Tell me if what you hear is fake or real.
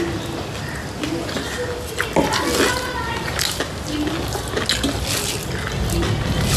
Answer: real